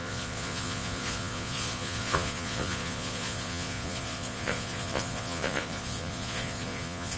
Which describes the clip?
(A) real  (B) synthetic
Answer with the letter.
B